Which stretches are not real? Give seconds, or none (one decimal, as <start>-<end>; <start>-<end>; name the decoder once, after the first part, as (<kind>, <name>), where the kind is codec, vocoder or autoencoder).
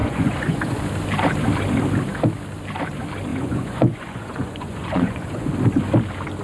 0.0-0.8 (vocoder, Vocos); 3.3-5.5